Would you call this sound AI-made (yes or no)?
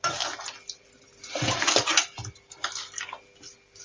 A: no